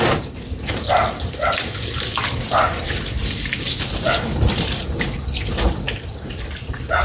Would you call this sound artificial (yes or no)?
no